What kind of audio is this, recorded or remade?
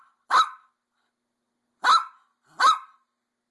recorded